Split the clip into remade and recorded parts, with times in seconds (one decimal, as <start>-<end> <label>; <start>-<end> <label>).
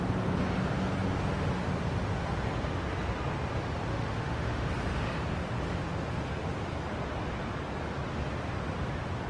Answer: 0.0-3.9 recorded; 3.9-4.7 remade; 4.7-9.3 recorded